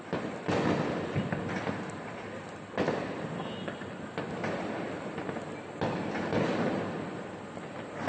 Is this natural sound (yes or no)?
yes